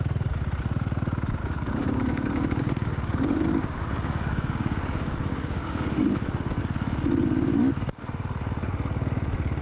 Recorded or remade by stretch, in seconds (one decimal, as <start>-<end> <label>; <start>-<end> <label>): 0.0-1.4 recorded; 1.4-6.6 remade; 6.6-9.6 recorded